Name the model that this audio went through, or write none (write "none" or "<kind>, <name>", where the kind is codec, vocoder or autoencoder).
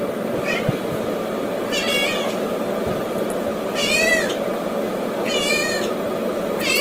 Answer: none